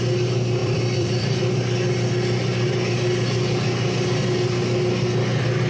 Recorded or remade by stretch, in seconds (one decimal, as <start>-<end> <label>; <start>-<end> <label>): 0.0-0.6 recorded; 0.6-1.5 remade; 1.5-5.7 recorded